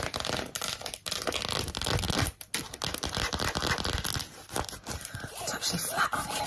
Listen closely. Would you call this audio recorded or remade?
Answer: recorded